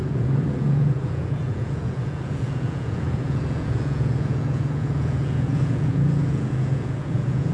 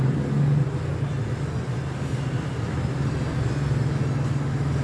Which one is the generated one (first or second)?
first